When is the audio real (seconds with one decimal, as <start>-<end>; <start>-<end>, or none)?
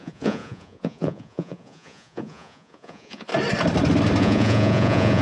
3.3-4.2